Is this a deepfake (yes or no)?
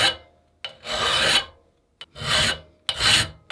no